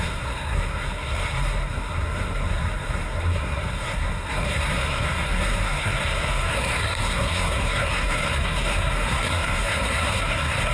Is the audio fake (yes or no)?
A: yes